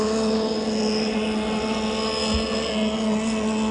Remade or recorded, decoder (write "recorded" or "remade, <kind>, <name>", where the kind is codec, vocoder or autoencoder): recorded